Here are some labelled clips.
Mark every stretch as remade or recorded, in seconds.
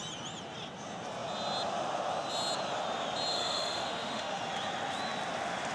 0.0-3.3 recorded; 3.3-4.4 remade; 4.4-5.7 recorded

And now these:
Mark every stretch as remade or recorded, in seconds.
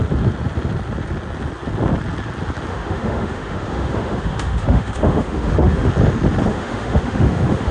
0.0-2.7 recorded; 2.7-5.9 remade; 5.9-6.5 recorded; 6.5-7.7 remade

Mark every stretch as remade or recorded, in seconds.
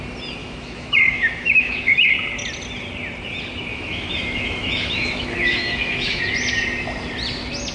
0.0-0.4 recorded; 0.4-2.1 remade; 2.1-3.7 recorded; 3.7-6.2 remade; 6.2-7.7 recorded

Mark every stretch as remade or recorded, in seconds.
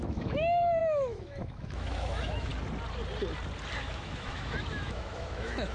0.0-2.5 remade; 2.5-3.8 recorded; 3.8-5.7 remade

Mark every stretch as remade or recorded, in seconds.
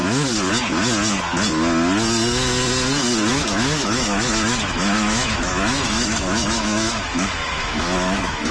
0.0-3.3 recorded; 3.3-8.5 remade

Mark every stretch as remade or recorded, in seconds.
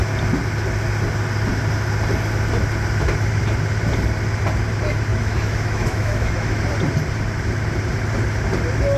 0.0-5.1 recorded; 5.1-6.6 remade; 6.6-9.0 recorded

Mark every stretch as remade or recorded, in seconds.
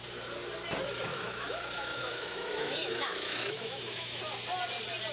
0.0-1.1 recorded; 1.1-4.2 remade; 4.2-5.1 recorded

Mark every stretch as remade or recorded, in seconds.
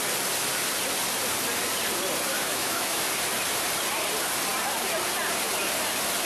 0.0-2.3 recorded; 2.3-3.1 remade; 3.1-6.3 recorded